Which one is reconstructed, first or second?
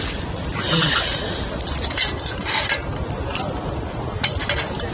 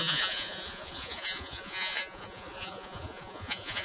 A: second